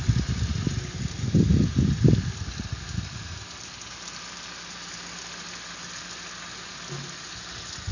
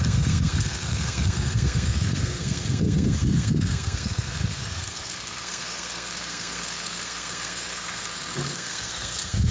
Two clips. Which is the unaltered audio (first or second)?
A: first